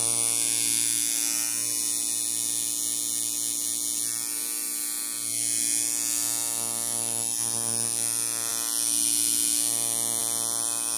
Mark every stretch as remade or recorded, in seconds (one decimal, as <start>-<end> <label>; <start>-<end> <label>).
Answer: 0.0-11.0 recorded